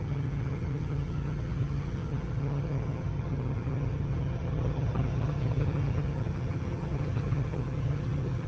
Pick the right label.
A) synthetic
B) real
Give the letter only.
A